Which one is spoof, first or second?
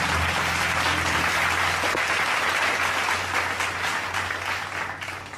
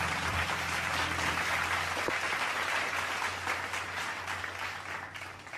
second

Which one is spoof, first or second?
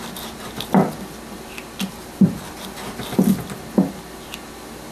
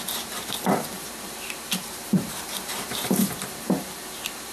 second